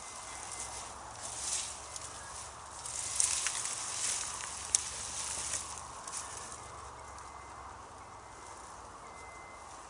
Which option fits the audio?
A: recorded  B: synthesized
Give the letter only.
A